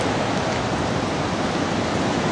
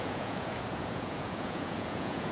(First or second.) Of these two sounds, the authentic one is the first